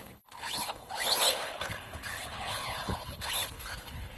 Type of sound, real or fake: fake